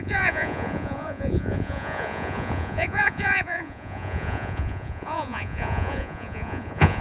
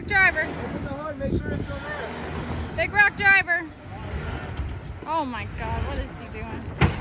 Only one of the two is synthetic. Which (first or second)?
first